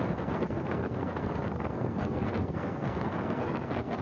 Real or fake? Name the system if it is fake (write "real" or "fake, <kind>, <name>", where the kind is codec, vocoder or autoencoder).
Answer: fake, codec, SNAC